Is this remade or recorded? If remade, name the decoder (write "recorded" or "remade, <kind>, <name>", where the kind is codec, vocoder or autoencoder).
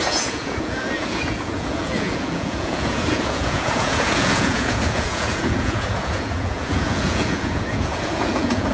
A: remade, vocoder, Vocos